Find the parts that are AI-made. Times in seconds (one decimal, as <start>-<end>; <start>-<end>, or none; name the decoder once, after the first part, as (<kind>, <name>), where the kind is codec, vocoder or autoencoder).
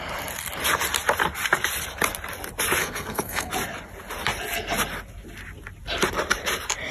2.8-3.5 (codec, SNAC)